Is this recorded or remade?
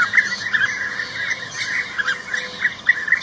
recorded